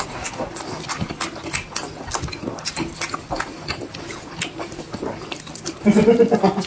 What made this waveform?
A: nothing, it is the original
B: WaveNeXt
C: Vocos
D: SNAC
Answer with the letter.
A